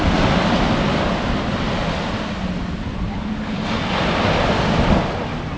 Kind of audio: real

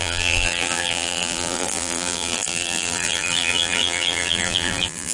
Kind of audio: fake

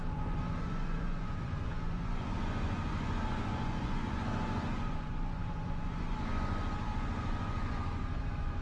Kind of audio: fake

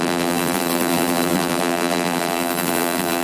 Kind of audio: fake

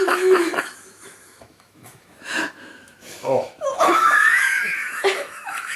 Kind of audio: fake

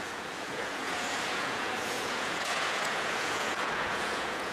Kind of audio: fake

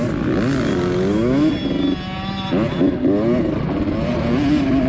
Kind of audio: real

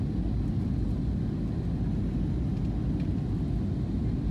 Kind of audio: real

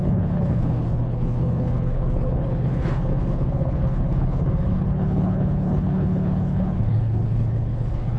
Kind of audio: fake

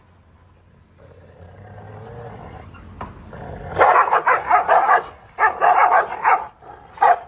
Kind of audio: real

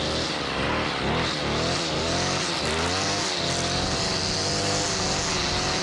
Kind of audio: real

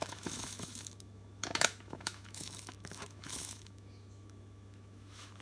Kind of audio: fake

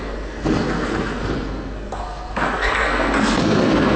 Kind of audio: fake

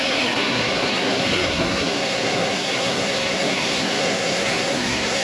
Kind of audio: fake